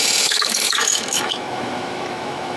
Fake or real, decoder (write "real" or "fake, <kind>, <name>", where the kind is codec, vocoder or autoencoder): fake, autoencoder, DAC-VAE